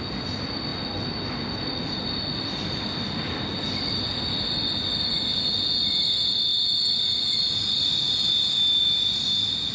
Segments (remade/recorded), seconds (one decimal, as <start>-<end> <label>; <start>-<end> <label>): 0.0-9.7 recorded